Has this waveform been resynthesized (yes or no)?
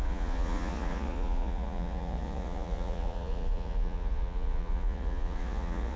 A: yes